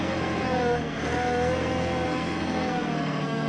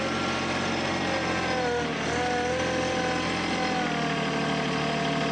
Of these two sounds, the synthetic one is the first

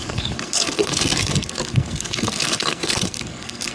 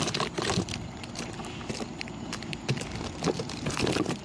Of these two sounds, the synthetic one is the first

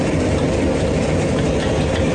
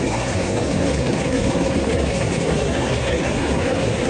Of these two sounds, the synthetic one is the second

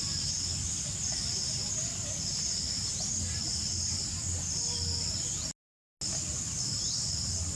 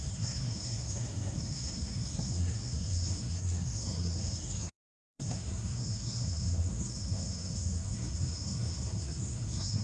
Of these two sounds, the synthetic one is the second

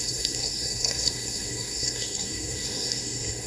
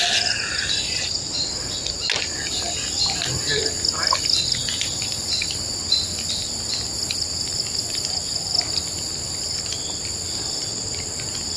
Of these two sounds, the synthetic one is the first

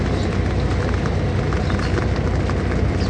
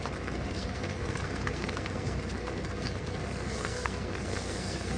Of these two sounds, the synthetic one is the second